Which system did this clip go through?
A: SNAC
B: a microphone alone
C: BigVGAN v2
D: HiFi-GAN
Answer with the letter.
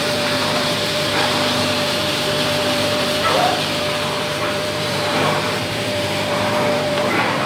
C